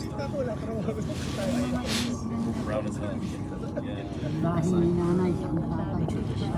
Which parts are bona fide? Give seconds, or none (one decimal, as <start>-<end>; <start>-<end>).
0.0-6.6